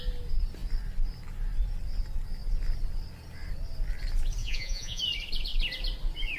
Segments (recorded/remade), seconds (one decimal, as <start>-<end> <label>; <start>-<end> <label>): 0.0-4.4 recorded; 4.4-5.0 remade; 5.0-6.4 recorded